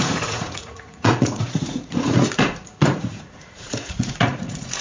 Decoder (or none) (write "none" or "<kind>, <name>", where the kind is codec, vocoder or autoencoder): vocoder, Vocos